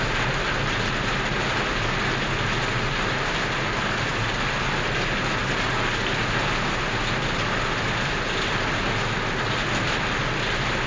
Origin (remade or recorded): recorded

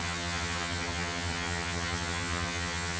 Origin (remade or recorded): remade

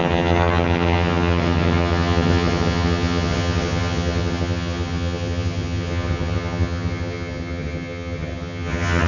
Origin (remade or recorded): remade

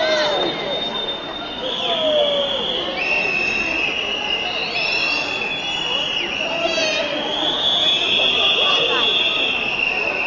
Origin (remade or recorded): recorded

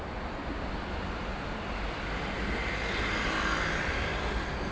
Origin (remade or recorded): recorded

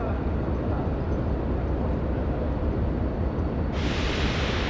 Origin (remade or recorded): recorded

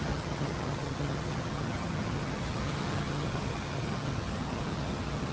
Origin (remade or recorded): remade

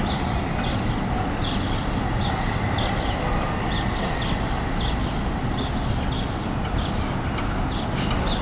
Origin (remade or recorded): recorded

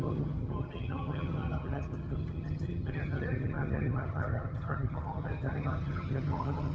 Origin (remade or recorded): remade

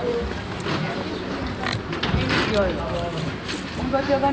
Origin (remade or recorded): recorded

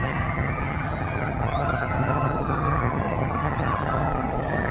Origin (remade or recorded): remade